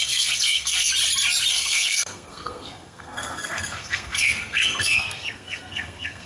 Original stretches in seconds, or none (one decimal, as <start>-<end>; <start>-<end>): 0.9-1.5